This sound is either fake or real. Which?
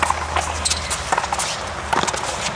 real